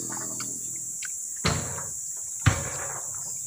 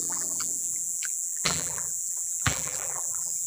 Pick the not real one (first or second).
second